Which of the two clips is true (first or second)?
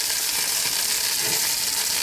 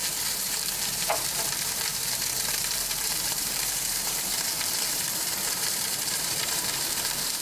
first